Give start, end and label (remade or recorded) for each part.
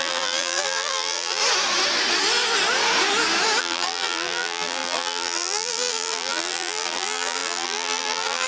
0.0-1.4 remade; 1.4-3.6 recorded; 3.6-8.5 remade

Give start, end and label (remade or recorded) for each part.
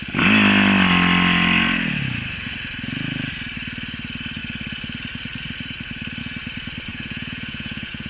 0.0-6.9 recorded; 6.9-8.1 remade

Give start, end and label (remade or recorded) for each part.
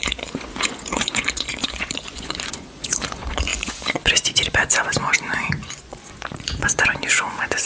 0.0-7.7 remade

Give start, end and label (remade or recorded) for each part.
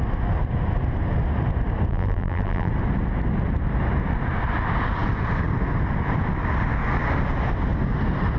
0.0-1.9 recorded; 1.9-2.7 remade; 2.7-8.4 recorded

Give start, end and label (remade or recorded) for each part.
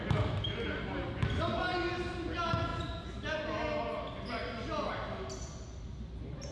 0.0-6.5 recorded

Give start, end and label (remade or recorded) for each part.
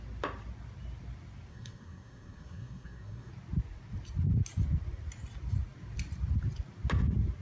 0.0-1.5 recorded; 1.5-3.3 remade; 3.3-7.4 recorded